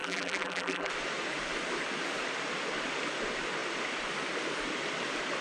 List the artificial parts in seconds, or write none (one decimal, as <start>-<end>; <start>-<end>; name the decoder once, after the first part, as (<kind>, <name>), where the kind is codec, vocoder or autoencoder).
0.0-0.9 (vocoder, BigVGAN v2)